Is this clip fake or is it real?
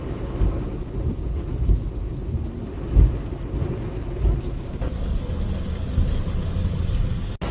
real